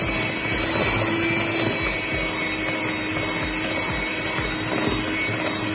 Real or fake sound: real